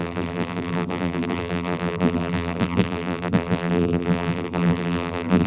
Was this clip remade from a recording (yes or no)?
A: yes